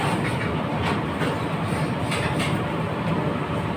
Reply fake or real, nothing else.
real